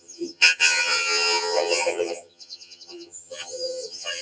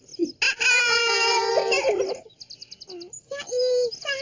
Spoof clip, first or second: first